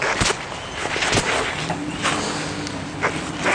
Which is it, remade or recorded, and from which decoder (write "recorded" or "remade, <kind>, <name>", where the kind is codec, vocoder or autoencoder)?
recorded